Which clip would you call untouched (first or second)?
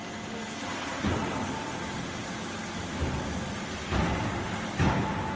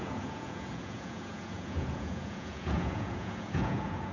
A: first